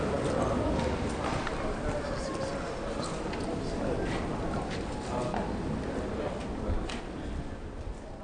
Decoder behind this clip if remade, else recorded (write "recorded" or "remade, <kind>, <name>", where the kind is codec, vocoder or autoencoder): recorded